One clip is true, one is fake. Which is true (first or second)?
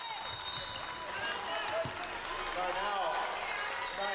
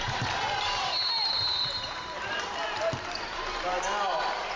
first